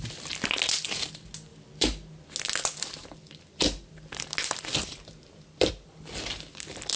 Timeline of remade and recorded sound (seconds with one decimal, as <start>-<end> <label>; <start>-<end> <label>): 0.0-7.0 recorded